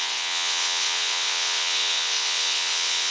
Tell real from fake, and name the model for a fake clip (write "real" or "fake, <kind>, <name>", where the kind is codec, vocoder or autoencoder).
fake, vocoder, WaveNeXt